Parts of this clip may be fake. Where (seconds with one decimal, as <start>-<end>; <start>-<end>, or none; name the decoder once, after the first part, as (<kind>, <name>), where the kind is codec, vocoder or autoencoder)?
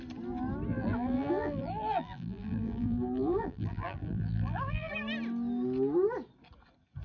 0.7-4.9 (vocoder, BigVGAN v2)